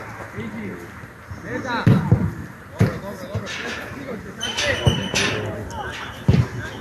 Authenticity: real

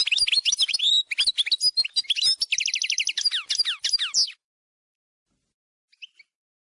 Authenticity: real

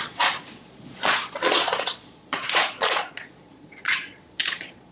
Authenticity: fake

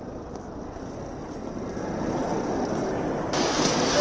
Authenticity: real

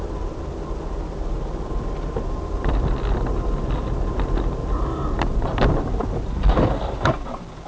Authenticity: real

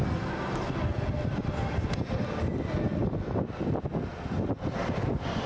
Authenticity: real